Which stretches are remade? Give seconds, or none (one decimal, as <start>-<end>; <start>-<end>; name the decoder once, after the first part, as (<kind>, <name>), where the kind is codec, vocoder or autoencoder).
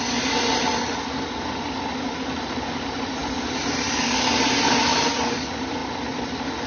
none